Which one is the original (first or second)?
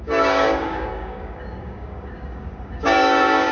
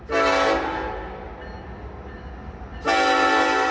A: second